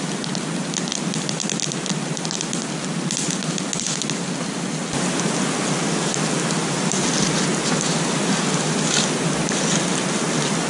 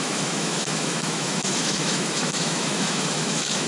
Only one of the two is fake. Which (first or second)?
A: second